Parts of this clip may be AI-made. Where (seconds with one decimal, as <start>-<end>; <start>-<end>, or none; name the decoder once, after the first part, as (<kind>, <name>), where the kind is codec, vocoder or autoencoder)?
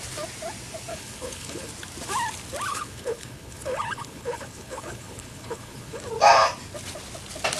0.9-1.7 (codec, HILCodec); 2.7-6.0